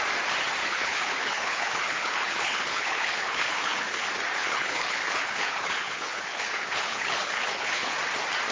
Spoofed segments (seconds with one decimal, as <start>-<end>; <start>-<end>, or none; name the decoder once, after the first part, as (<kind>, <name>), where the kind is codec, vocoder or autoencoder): 0.6-4.0 (codec, HILCodec); 4.4-7.9